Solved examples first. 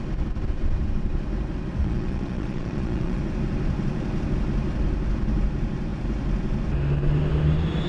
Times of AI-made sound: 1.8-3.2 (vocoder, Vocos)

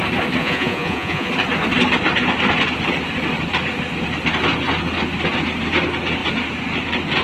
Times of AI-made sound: 0.4-1.3 (vocoder, Vocos)

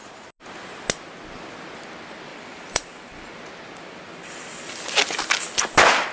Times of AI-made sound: 2.3-3.3 (vocoder, BigVGAN v2)

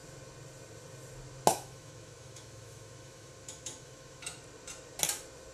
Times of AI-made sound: 1.5-4.4 (autoencoder, DAC-VAE)

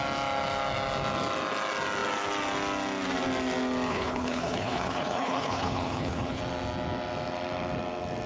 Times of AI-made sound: 3.9-6.4 (codec, HILCodec)

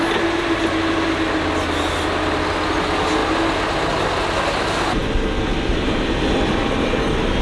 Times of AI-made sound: none